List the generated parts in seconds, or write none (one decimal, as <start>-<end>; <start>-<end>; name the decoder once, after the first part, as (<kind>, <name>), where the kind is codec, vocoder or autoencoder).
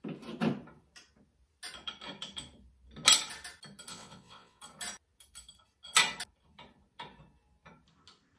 3.9-4.6 (vocoder, WaveNeXt)